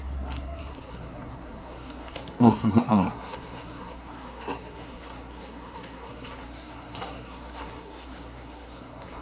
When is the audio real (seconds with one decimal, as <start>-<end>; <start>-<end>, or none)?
none